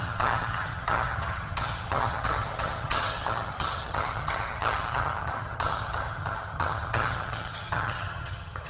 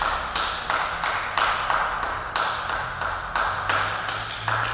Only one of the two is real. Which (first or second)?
second